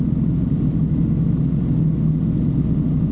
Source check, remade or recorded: recorded